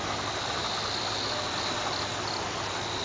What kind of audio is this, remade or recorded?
recorded